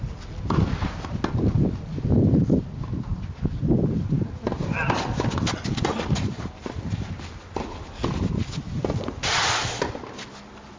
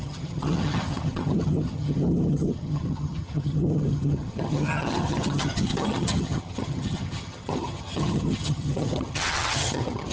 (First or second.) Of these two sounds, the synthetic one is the second